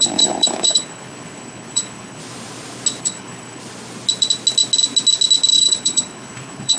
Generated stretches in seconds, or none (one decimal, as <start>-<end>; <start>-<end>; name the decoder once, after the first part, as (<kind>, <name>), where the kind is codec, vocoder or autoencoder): 0.0-2.2 (codec, HILCodec); 3.0-3.6; 5.5-6.8